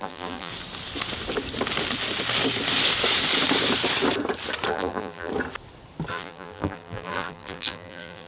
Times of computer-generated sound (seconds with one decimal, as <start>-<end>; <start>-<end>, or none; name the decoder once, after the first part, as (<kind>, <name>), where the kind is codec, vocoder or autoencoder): 0.0-0.5 (vocoder, BigVGAN v2); 4.7-5.3; 6.1-8.3